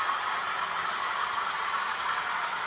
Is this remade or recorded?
recorded